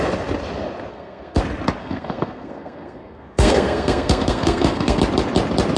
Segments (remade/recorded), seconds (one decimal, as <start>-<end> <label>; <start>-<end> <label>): 0.0-0.9 recorded; 0.9-1.4 remade; 1.4-1.8 recorded; 1.8-5.0 remade; 5.0-5.8 recorded